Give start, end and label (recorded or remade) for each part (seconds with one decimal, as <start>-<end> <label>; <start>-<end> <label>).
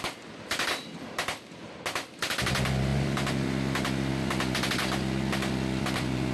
0.0-6.3 recorded